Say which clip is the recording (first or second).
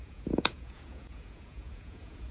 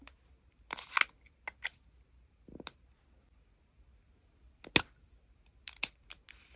second